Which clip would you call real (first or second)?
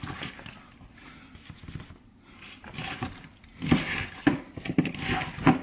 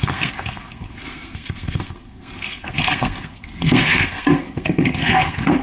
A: first